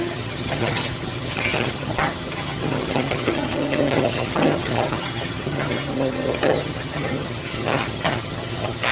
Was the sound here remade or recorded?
remade